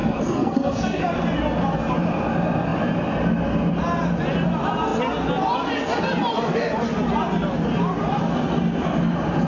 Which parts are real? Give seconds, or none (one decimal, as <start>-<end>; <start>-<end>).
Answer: 1.0-9.5